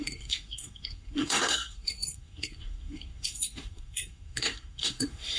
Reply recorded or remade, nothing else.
remade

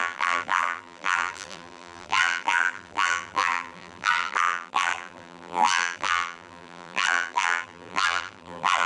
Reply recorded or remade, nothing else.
remade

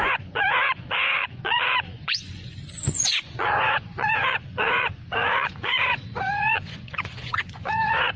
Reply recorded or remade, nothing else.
remade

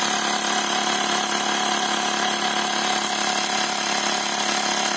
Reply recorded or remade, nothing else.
recorded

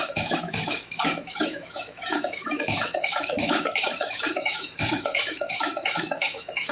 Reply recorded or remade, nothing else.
remade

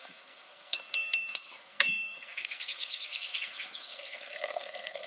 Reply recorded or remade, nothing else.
remade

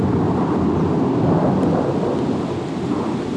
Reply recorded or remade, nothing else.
recorded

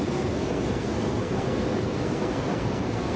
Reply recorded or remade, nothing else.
remade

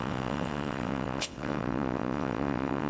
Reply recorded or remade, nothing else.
remade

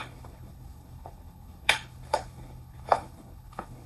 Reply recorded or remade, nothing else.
remade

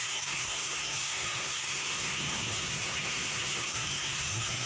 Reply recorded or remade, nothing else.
remade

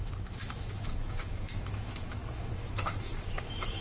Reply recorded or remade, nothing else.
remade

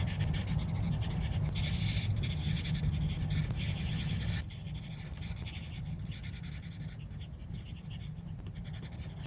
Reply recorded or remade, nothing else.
recorded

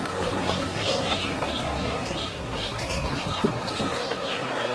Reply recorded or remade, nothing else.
remade